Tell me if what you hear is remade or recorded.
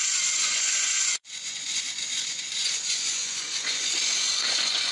remade